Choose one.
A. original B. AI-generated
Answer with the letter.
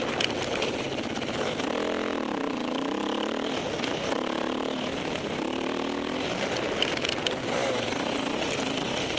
A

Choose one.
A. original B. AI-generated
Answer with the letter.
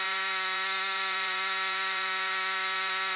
B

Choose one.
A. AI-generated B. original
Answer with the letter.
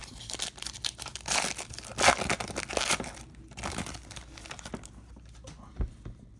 B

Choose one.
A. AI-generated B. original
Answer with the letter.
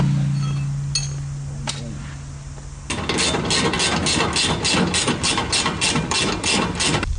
B